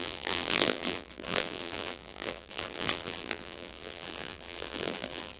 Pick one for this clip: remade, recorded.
remade